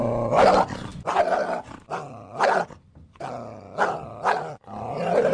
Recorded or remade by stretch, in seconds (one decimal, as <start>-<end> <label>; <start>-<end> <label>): 0.0-5.3 recorded